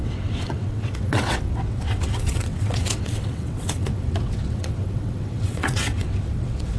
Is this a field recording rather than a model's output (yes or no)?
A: no